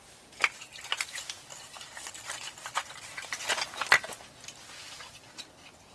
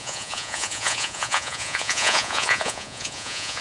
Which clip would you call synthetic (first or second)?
second